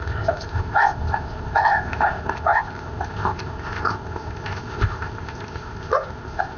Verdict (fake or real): fake